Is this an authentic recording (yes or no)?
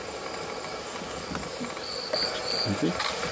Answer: yes